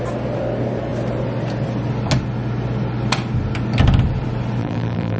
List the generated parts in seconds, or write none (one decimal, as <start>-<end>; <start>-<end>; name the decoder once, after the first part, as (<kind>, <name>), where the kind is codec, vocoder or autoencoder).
4.6-5.2 (vocoder, BigVGAN v2)